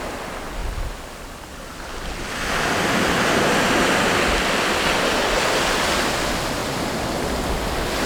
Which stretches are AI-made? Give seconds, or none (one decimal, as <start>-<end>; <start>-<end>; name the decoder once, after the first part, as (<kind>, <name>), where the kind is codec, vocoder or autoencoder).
none